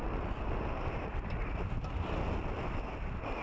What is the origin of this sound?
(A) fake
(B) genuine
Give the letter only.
B